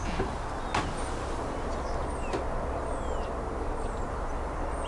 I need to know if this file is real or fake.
real